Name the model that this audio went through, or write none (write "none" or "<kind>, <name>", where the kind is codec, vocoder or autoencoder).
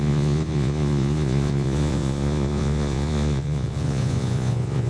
vocoder, Vocos